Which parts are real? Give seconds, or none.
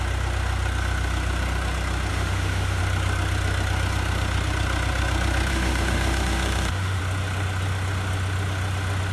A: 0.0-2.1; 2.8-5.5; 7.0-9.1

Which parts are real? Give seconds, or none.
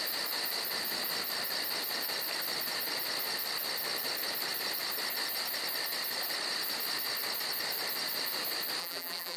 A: 0.0-8.8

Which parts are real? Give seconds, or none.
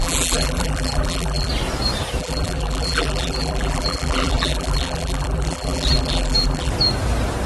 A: 1.5-2.2; 6.7-7.5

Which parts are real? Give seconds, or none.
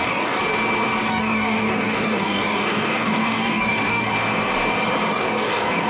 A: 0.4-1.1; 4.1-5.1